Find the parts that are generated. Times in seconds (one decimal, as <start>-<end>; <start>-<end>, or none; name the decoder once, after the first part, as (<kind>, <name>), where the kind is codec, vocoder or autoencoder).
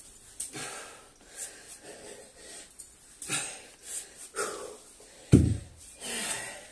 none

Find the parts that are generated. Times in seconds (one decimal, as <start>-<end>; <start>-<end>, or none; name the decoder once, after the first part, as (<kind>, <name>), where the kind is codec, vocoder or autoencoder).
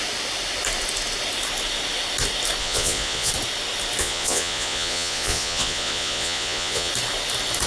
2.6-3.3 (vocoder, Vocos); 4.0-6.9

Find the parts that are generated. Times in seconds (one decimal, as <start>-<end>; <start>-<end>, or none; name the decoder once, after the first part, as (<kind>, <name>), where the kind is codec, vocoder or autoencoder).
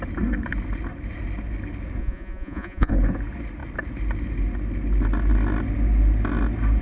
2.0-2.9 (vocoder, Vocos)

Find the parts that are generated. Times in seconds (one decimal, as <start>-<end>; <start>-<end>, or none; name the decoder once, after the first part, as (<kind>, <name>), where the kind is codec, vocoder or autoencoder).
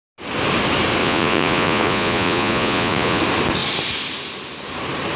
1.0-3.2 (vocoder, Vocos)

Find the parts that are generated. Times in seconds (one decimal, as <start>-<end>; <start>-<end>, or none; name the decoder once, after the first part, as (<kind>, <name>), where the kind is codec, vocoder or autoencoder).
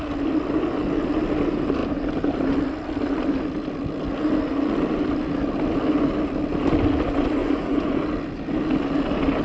7.4-8.0 (vocoder, Vocos)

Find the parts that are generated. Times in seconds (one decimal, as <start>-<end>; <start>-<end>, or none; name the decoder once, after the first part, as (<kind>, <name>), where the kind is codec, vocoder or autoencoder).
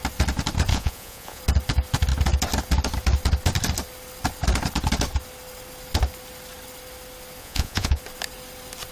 0.7-1.4 (vocoder, Vocos); 7.4-8.0